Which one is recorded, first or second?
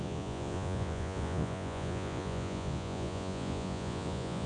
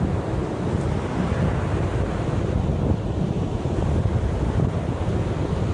second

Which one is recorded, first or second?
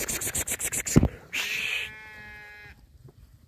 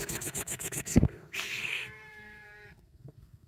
first